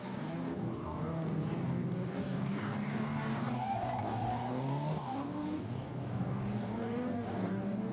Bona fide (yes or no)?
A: no